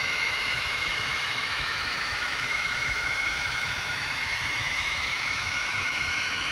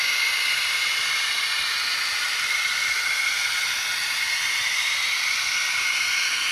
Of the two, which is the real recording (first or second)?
second